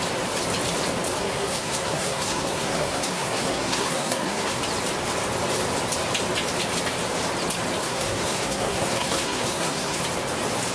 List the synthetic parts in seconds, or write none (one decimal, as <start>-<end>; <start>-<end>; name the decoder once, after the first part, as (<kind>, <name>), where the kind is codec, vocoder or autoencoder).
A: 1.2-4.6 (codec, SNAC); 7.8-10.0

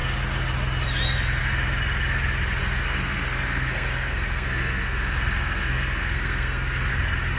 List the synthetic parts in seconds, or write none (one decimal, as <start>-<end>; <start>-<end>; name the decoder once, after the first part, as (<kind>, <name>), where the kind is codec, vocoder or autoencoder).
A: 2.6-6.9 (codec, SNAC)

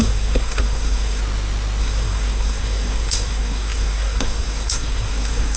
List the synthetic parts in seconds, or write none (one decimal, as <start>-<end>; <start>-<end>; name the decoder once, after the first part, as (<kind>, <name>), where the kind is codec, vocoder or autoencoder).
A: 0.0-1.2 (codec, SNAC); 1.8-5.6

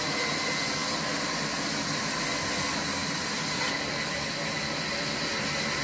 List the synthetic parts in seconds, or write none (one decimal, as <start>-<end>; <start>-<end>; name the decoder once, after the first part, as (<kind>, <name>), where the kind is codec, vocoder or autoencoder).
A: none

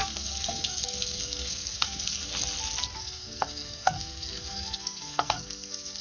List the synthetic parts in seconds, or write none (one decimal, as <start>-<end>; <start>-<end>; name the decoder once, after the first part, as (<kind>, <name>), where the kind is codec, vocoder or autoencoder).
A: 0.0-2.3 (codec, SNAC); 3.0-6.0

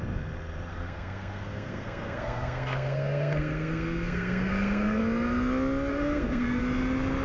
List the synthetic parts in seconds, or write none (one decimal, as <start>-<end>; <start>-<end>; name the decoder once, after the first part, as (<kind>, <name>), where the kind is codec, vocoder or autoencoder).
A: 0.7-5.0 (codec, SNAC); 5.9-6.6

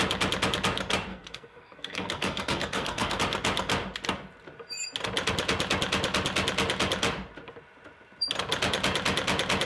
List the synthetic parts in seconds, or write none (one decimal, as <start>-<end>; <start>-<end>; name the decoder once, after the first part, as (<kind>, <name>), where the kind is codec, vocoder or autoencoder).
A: 1.1-3.2 (codec, SNAC)